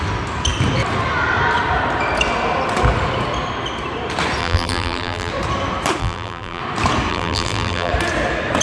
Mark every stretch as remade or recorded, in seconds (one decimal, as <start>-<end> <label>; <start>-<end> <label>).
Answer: 0.0-4.4 recorded; 4.4-5.3 remade; 5.3-6.0 recorded; 6.0-6.6 remade; 6.6-7.1 recorded; 7.1-7.9 remade; 7.9-8.6 recorded